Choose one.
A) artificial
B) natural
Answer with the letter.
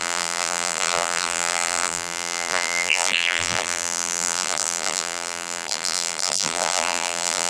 A